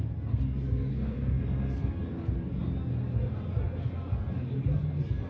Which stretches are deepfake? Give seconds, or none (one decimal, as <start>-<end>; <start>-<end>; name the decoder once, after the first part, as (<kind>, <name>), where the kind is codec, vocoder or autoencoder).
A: 0.9-1.9 (codec, SNAC)